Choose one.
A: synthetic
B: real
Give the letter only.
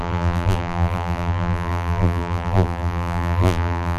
A